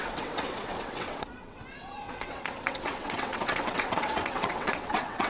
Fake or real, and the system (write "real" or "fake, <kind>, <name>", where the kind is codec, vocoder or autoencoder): fake, vocoder, WaveNeXt